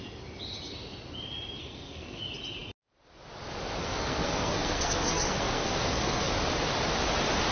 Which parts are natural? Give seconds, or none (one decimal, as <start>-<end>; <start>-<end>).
0.0-1.6; 2.2-3.8; 6.3-7.5